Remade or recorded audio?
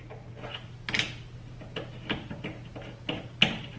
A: recorded